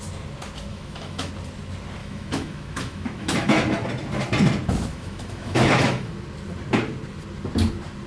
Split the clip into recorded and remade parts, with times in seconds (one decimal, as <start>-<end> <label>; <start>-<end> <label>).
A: 0.0-0.7 recorded; 0.7-1.3 remade; 1.3-2.0 recorded; 2.0-3.6 remade; 3.6-4.9 recorded; 4.9-6.1 remade; 6.1-8.1 recorded

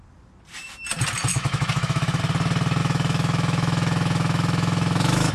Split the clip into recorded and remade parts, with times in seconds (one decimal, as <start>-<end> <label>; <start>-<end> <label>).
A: 0.0-1.3 recorded; 1.3-2.2 remade; 2.2-2.8 recorded; 2.8-5.3 remade

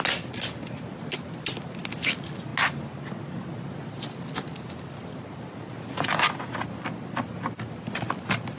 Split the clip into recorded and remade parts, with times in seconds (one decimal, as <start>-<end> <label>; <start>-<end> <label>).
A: 0.0-8.6 recorded

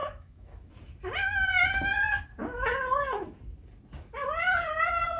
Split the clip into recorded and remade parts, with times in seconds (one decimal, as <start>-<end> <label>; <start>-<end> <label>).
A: 0.0-0.7 remade; 0.7-5.2 recorded

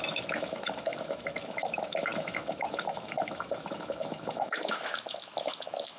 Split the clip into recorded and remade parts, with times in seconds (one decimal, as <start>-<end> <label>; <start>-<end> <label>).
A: 0.0-6.0 remade

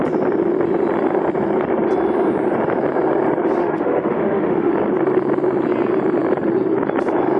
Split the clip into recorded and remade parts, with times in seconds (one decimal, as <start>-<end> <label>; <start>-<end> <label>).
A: 0.0-3.6 recorded; 3.6-4.7 remade; 4.7-7.4 recorded